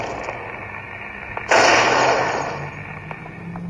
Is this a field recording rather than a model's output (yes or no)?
yes